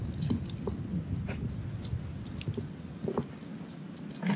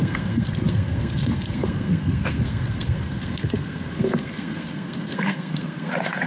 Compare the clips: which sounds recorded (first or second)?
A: first